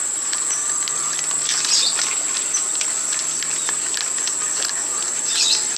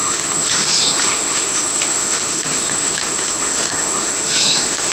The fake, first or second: second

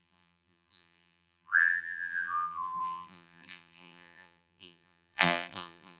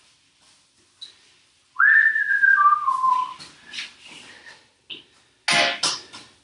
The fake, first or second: first